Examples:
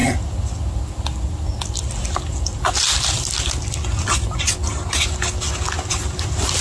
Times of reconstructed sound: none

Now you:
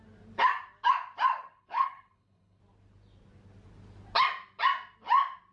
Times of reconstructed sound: 1.4-2.6 (codec, HILCodec)

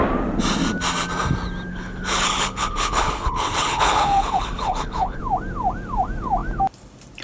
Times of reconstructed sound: 1.7-5.2 (codec, HILCodec)